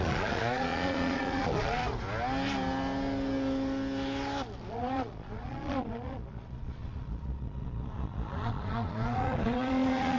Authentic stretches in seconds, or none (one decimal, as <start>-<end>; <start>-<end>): 1.8-4.7